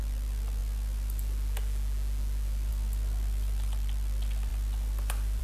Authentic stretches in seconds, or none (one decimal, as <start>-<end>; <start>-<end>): 0.0-4.5